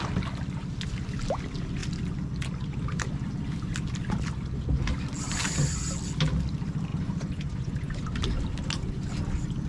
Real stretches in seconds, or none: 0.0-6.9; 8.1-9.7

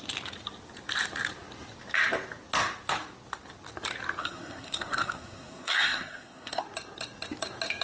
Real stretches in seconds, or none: 0.0-4.2; 6.6-7.8

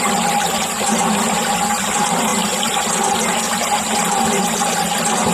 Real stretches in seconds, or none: 0.0-5.3

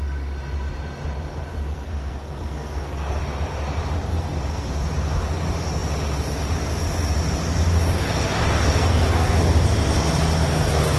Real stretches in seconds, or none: 0.0-1.7; 3.2-4.1; 4.7-8.7; 9.5-11.0

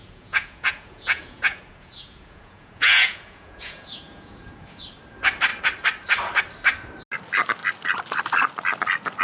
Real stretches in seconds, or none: 4.8-9.2

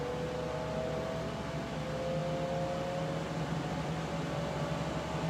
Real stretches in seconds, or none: 0.0-5.3